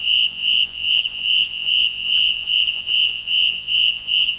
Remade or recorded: remade